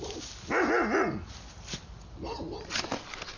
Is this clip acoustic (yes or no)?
yes